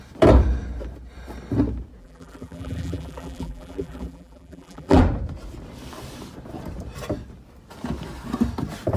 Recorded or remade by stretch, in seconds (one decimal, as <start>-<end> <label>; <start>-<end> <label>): 0.0-2.0 recorded; 2.0-5.0 remade; 5.0-9.0 recorded